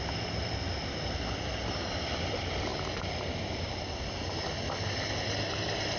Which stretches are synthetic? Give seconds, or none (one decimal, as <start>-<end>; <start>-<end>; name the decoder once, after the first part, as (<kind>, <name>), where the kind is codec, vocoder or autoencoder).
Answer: none

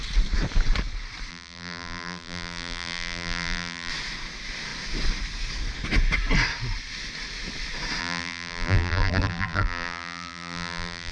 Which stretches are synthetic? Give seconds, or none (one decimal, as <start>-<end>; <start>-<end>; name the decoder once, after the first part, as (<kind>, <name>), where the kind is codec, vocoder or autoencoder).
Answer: 1.3-3.9 (vocoder, BigVGAN v2); 8.0-11.1